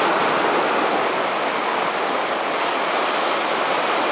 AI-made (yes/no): no